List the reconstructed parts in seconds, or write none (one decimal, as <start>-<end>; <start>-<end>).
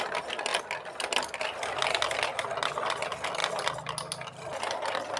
none